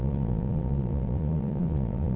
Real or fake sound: fake